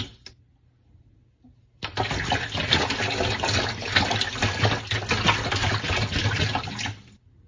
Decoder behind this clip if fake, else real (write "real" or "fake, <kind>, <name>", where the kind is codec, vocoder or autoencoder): real